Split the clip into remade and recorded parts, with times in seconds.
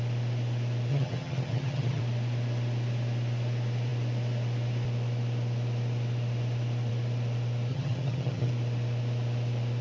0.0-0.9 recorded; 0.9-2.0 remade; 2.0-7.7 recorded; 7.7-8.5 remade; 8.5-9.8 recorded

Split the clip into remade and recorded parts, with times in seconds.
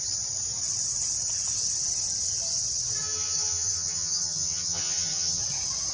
0.0-3.0 recorded; 3.0-5.4 remade; 5.4-5.9 recorded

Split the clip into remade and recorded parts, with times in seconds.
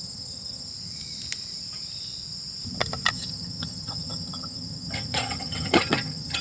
0.0-0.7 remade; 0.7-3.1 recorded; 3.1-6.4 remade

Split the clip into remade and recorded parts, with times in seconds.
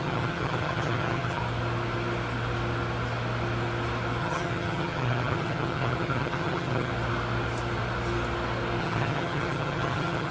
0.0-1.4 remade; 1.4-4.2 recorded; 4.2-6.9 remade; 6.9-8.8 recorded; 8.8-10.3 remade